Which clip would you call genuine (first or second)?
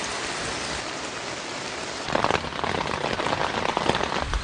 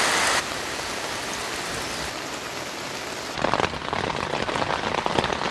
second